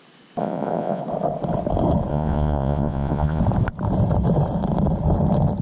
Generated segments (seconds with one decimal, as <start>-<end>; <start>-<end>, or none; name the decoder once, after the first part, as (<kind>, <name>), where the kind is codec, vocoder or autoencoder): 0.4-1.0 (vocoder, Vocos); 2.1-3.4